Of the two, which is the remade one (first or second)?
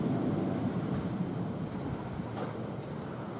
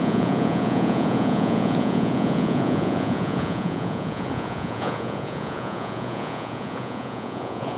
second